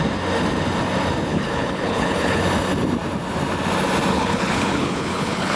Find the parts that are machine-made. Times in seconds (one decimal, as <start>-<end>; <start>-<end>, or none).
1.3-2.4; 4.1-5.6

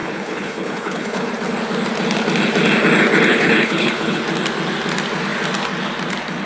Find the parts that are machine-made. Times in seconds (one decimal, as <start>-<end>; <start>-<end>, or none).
0.0-1.3; 3.3-4.2

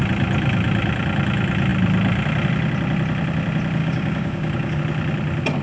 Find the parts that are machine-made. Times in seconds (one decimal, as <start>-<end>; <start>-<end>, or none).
3.8-4.8

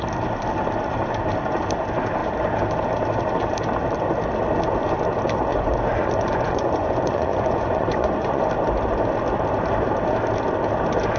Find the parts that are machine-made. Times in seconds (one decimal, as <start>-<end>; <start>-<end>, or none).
5.5-8.4

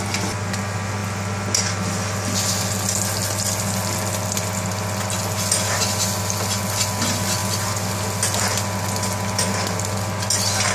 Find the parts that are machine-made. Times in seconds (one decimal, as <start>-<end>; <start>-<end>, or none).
none

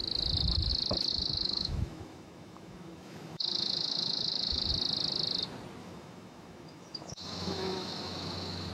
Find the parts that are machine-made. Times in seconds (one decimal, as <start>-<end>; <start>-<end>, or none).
1.1-4.7; 5.8-8.7